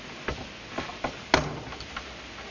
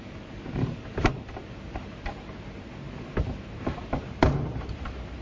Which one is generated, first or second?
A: second